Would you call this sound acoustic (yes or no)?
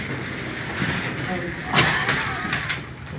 yes